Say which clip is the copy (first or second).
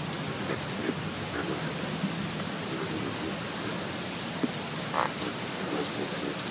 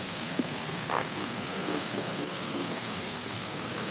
second